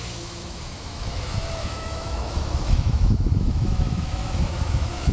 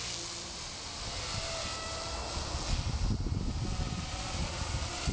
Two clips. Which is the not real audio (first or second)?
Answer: first